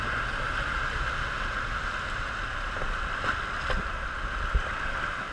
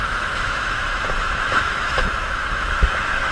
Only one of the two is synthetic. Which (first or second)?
second